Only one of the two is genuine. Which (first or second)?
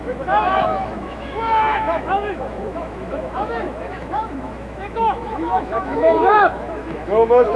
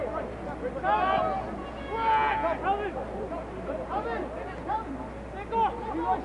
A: second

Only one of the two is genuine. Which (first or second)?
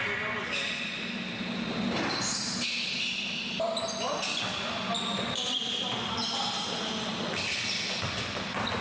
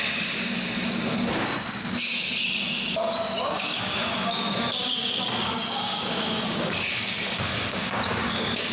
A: first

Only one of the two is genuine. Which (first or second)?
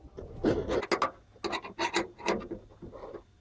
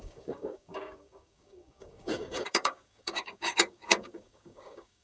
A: first